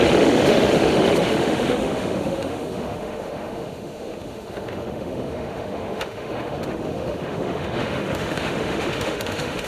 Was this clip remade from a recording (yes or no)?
yes